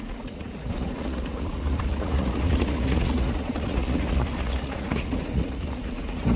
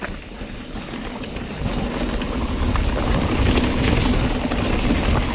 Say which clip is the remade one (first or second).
first